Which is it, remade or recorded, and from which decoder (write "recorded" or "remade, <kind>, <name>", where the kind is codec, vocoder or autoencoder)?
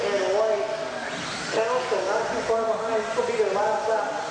recorded